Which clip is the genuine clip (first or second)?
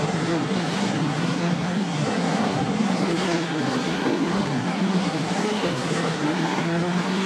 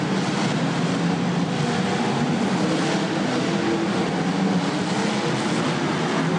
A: second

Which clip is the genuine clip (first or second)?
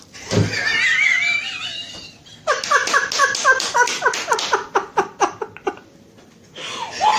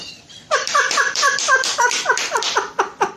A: first